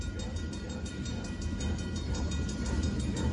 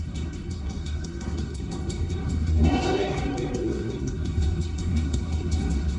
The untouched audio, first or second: first